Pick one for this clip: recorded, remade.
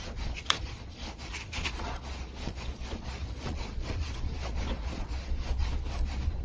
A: remade